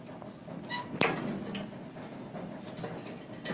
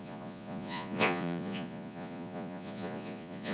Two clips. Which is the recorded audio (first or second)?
first